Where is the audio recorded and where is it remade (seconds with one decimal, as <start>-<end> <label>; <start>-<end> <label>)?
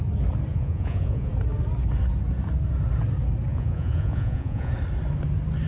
0.0-0.5 recorded; 0.5-1.3 remade; 1.3-3.5 recorded; 3.5-4.7 remade; 4.7-5.7 recorded